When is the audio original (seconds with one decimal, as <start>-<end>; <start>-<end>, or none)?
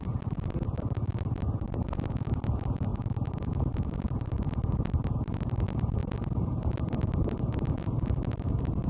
1.1-1.8